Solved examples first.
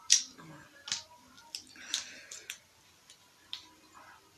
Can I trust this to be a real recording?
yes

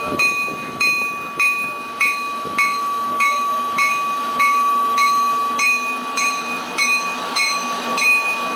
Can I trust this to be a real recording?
no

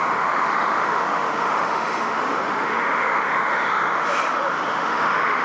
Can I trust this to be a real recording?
no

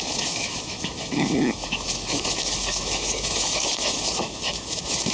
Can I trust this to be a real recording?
no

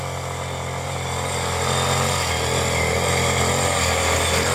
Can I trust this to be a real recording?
yes